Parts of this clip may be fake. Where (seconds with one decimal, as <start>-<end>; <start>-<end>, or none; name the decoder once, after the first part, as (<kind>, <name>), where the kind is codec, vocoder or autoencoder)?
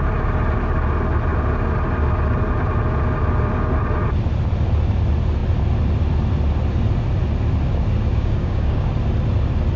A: 8.1-8.9 (codec, DAC)